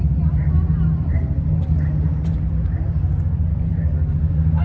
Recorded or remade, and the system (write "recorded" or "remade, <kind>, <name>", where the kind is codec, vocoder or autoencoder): recorded